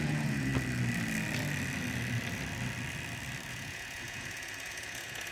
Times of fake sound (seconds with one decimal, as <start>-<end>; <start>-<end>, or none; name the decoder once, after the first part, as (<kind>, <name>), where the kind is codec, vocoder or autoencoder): 0.0-0.5 (vocoder, Vocos); 3.5-5.3